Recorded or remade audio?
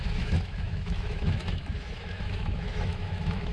remade